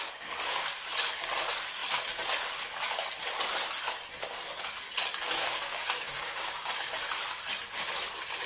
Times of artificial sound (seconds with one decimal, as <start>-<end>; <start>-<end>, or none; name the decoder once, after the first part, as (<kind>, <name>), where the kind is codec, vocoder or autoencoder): 5.4-6.7 (codec, DAC)